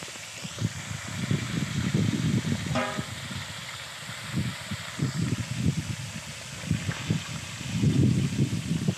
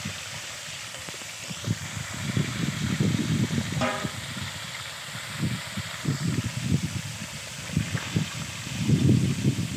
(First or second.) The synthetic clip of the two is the second